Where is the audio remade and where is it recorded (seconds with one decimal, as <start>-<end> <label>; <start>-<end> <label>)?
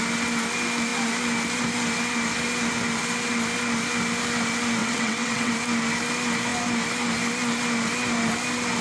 0.0-4.8 recorded; 4.8-5.5 remade; 5.5-8.8 recorded